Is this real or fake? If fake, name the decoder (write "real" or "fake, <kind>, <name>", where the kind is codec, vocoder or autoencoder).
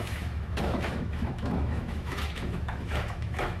fake, autoencoder, DAC-VAE